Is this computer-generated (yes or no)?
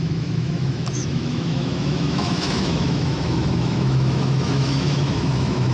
yes